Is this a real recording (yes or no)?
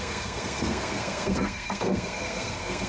no